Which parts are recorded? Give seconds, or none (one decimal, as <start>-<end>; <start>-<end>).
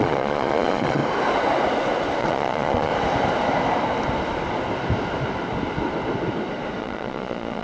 1.0-2.2; 2.9-6.8